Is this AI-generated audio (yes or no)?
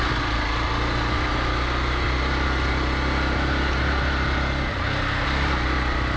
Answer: no